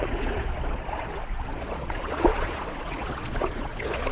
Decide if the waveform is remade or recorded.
remade